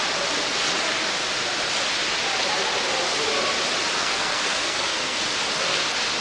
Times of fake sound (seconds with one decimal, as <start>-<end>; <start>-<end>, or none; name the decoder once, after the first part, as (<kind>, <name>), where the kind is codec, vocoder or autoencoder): 4.0-5.2 (codec, SNAC)